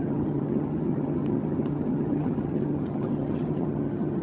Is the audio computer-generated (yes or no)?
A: yes